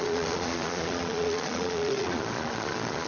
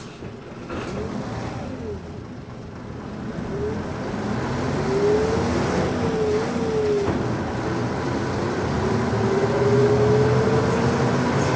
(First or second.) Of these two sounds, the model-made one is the first